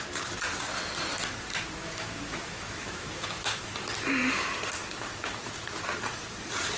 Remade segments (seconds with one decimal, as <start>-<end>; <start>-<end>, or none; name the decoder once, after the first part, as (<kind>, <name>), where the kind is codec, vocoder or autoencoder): 1.8-3.7 (autoencoder, DAC-VAE); 4.8-5.5